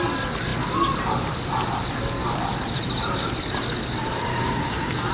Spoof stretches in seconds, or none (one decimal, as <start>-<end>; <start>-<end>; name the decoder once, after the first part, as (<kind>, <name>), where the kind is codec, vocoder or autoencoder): 4.3-5.1 (codec, DAC)

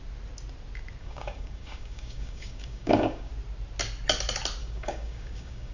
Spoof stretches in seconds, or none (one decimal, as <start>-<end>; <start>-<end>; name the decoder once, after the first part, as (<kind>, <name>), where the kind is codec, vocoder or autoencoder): 1.0-3.3 (codec, DAC); 4.6-5.7

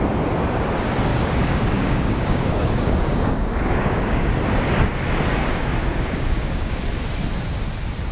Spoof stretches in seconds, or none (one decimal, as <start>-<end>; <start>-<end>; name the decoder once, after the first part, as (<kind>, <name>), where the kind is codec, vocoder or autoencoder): 1.1-4.3 (codec, DAC); 5.4-6.8

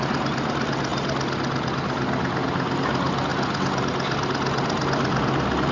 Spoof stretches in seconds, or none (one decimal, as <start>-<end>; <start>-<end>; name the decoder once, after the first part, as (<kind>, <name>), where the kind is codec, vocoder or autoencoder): none

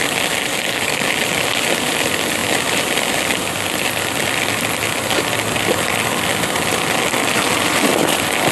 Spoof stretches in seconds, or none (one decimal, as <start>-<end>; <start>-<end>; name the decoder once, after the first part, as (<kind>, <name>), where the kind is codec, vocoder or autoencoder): 0.5-1.1 (codec, DAC)